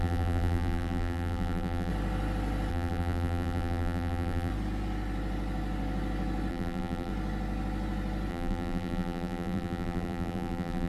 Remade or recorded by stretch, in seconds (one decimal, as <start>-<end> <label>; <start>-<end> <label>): 0.0-1.9 remade; 1.9-2.7 recorded; 2.7-4.5 remade; 4.5-6.5 recorded; 6.5-7.1 remade; 7.1-8.3 recorded; 8.3-10.9 remade